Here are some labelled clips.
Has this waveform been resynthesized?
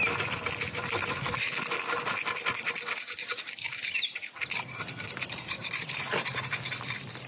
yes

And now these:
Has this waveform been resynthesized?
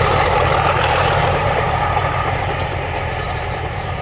yes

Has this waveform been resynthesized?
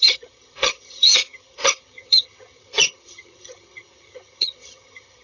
yes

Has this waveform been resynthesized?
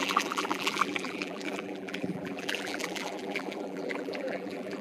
yes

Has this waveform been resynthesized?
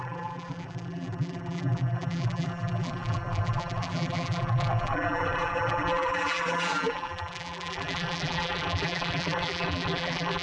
yes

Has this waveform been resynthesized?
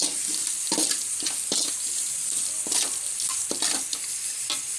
no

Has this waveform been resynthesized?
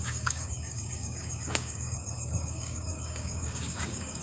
yes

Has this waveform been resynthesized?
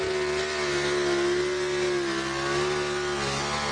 no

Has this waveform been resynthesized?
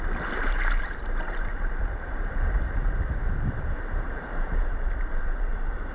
yes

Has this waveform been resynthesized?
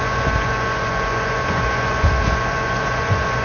yes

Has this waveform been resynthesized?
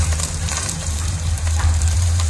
yes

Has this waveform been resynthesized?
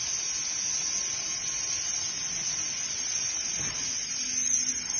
no